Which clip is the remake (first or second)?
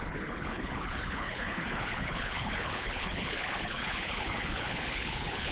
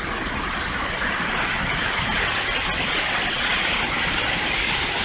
first